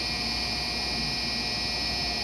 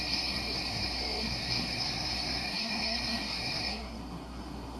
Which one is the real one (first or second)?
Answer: first